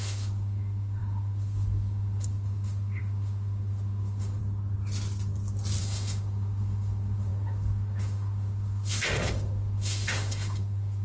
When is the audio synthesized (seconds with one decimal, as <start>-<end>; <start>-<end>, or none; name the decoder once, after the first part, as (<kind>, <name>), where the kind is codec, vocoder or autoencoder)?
0.0-4.4 (autoencoder, DAC-VAE); 5.8-11.0